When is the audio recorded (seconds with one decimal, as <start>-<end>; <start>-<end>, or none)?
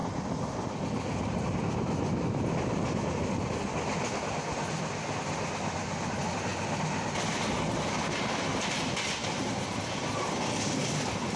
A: 0.0-11.4